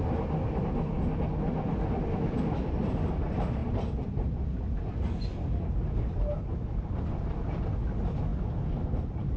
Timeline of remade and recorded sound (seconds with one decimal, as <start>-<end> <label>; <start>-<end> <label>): 0.0-9.4 recorded